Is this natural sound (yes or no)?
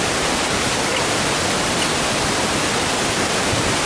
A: yes